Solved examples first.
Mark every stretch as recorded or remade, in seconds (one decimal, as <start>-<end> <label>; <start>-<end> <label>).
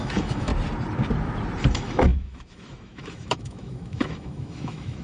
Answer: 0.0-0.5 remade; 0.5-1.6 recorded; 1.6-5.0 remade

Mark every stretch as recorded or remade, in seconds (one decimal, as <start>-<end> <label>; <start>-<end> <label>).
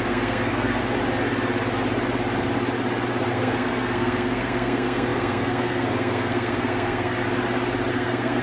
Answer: 0.0-0.8 remade; 0.8-3.3 recorded; 3.3-7.2 remade; 7.2-7.9 recorded; 7.9-8.4 remade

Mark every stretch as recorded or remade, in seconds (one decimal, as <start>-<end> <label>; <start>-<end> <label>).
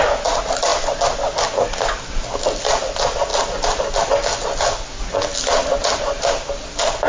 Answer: 0.0-7.1 recorded